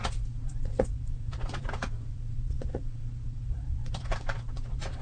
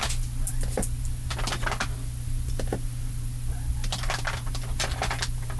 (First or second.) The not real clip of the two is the first